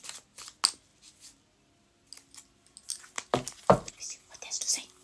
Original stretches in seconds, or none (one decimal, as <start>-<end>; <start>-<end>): 0.0-5.0